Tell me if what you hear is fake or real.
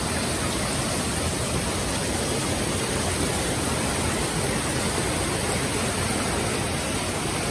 real